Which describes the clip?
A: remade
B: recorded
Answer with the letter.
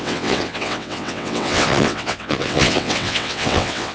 A